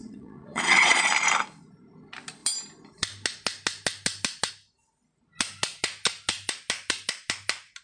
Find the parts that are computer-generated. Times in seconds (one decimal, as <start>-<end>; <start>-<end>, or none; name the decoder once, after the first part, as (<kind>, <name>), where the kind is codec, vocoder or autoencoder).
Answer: 0.0-1.1 (vocoder, Vocos)